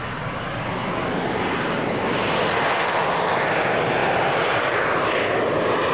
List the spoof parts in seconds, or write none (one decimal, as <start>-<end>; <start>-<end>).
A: none

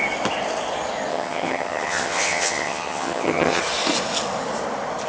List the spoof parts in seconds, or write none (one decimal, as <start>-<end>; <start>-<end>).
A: 1.1-3.6

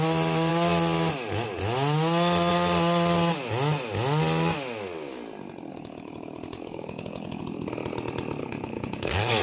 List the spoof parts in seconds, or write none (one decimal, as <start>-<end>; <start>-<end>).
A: 5.7-7.4; 8.4-9.4

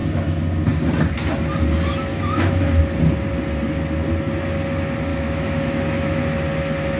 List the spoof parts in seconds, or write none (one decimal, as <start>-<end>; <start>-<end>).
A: 2.1-2.8; 5.1-6.2

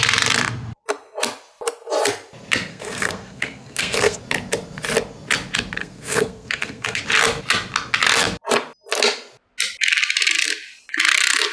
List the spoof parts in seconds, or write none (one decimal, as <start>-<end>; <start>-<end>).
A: 2.7-4.2; 5.8-7.0

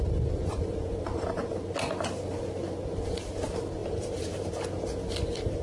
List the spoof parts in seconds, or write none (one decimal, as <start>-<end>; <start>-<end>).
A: 3.8-4.5

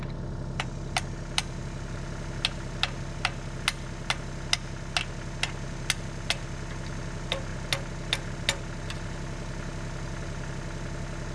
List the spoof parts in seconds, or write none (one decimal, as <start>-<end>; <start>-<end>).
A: none